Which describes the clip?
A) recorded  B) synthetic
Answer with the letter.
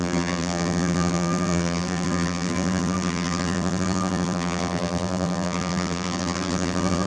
B